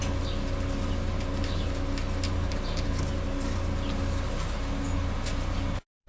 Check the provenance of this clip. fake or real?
real